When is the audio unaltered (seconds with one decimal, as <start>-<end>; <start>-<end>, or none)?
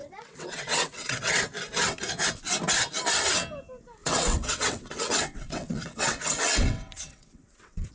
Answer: 1.4-4.0